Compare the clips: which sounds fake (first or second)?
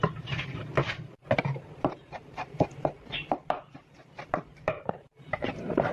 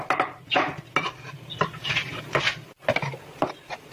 first